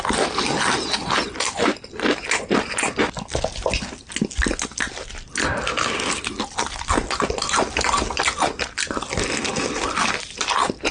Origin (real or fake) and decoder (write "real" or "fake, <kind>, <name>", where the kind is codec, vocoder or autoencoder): real